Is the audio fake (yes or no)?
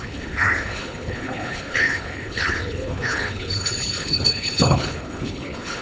yes